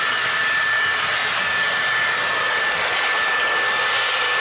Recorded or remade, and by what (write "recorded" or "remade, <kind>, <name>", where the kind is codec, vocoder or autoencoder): recorded